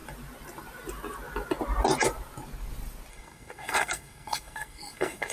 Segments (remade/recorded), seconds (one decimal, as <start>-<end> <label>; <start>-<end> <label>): 0.0-3.1 recorded; 3.1-5.3 remade